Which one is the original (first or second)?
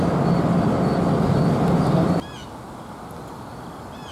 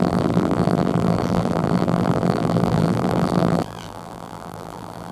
first